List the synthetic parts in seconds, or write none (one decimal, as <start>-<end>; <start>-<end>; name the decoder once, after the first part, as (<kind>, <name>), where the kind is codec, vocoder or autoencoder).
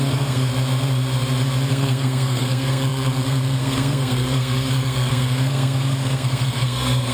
0.0-0.5 (codec, SNAC); 1.7-7.1